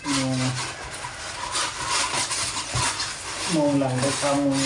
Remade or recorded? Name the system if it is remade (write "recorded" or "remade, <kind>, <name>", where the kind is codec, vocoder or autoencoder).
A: recorded